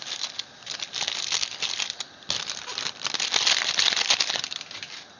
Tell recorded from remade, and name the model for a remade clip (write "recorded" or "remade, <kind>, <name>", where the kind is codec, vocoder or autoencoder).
recorded